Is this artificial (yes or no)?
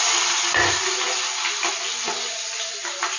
no